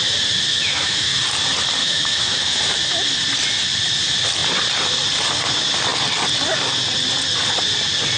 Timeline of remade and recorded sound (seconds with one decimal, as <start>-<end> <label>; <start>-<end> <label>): 0.0-0.5 recorded; 0.5-1.2 remade; 1.2-1.8 recorded; 1.8-2.6 remade; 2.6-8.2 recorded

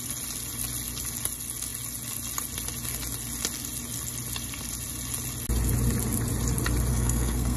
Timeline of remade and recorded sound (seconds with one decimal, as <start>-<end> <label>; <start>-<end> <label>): 0.0-6.9 recorded; 6.9-7.6 remade

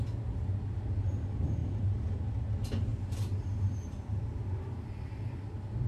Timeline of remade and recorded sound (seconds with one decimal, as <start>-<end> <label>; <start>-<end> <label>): 0.0-1.6 recorded; 1.6-2.2 remade; 2.2-2.9 recorded; 2.9-4.2 remade; 4.2-5.9 recorded

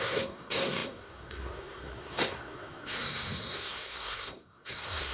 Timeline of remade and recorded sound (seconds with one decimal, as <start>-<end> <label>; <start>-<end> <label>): 0.0-5.1 remade